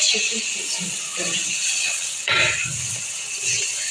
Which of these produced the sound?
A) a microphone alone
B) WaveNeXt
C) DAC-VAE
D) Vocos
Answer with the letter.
B